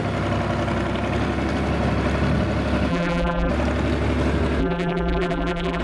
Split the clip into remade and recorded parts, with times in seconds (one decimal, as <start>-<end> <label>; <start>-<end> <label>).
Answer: 0.0-2.9 recorded; 2.9-3.5 remade; 3.5-4.6 recorded; 4.6-5.8 remade